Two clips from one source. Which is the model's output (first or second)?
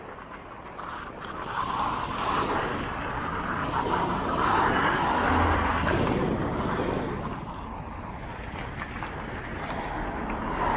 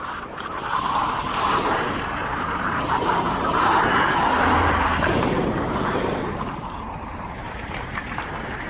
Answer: second